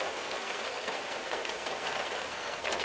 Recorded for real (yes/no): no